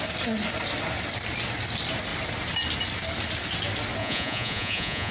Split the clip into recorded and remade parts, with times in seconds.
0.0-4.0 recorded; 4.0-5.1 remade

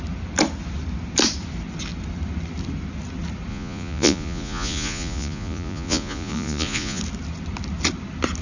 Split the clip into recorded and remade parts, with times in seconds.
0.0-3.5 recorded; 3.5-7.0 remade; 7.0-8.4 recorded

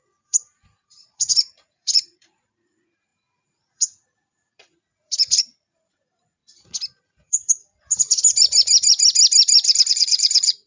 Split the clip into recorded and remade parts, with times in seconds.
0.0-6.4 remade; 6.4-7.0 recorded; 7.0-7.4 remade; 7.4-9.9 recorded; 9.9-10.7 remade

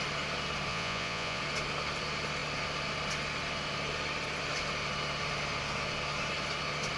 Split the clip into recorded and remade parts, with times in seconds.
0.0-0.7 recorded; 0.7-1.4 remade; 1.4-7.0 recorded

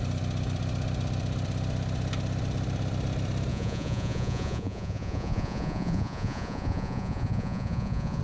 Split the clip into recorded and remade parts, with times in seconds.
0.0-3.5 recorded; 3.5-8.2 remade

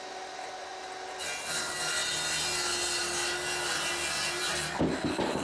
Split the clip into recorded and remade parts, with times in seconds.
0.0-5.4 recorded